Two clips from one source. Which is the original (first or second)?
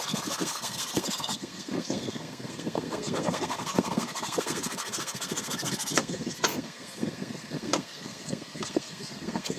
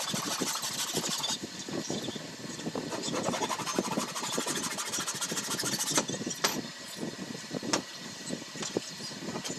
second